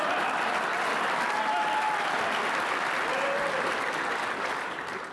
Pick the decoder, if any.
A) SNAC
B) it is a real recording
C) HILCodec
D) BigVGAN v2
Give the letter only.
B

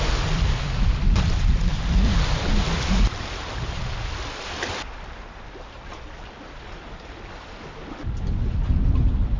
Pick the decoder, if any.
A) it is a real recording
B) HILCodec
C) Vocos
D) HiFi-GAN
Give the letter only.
A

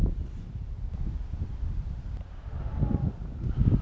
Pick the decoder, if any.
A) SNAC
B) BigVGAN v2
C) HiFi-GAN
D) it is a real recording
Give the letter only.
B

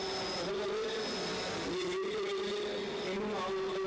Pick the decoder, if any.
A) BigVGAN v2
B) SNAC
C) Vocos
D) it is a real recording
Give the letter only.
D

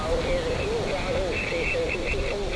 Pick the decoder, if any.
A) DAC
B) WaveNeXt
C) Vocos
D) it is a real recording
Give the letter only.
D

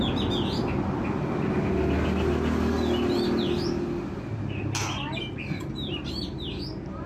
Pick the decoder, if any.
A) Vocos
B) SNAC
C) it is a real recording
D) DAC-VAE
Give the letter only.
C